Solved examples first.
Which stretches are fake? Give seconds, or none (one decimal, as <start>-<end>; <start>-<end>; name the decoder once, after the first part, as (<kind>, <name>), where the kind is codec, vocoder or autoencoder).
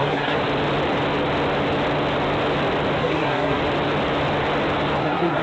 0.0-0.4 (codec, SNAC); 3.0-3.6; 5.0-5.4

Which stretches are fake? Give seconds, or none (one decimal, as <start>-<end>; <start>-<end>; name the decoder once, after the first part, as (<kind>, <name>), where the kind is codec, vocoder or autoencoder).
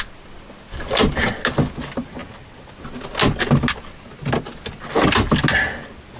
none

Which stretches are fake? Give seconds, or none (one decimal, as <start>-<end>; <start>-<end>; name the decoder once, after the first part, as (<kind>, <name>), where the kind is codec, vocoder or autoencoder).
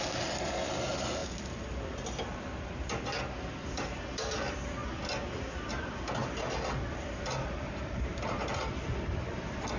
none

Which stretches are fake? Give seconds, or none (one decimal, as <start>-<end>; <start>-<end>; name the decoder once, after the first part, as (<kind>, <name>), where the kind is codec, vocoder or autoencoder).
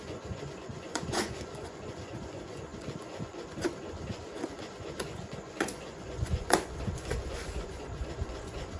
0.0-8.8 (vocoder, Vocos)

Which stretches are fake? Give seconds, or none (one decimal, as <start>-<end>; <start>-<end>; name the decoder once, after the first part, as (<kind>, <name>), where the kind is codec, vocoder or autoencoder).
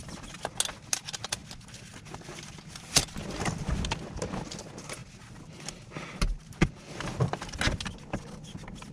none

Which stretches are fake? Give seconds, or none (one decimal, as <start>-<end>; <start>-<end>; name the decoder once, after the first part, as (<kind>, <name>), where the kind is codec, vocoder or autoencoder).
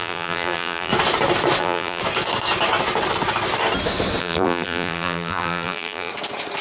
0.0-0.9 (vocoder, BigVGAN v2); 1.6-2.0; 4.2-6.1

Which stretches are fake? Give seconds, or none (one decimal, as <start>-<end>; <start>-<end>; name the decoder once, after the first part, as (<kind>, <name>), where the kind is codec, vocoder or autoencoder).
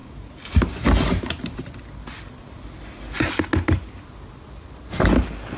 none